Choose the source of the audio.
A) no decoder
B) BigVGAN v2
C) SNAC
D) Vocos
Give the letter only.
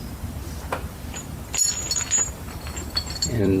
B